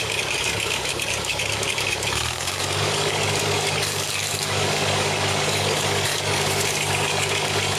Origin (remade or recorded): remade